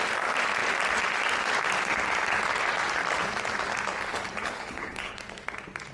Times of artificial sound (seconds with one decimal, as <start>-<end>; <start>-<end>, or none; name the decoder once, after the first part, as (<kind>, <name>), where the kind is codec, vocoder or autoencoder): 4.1-5.2 (codec, HILCodec)